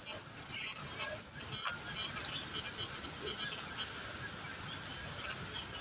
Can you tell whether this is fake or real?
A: real